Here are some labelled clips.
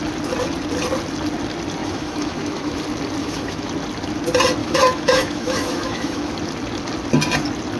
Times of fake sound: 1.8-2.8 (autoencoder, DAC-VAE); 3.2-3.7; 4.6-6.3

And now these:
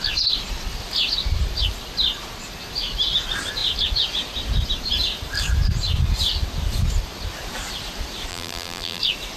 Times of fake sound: 8.3-9.0 (vocoder, BigVGAN v2)

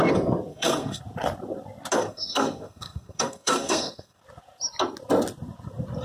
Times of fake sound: 0.5-1.0 (codec, SNAC); 2.0-4.2

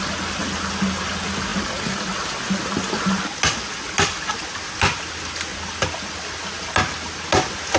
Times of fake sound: none